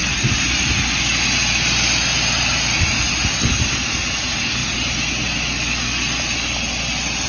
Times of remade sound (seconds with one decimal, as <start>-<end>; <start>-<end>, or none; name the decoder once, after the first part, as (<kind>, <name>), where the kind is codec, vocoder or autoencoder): none